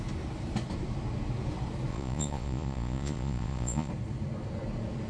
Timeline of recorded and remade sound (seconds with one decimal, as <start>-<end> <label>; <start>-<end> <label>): 0.0-1.9 recorded; 1.9-3.9 remade; 3.9-5.1 recorded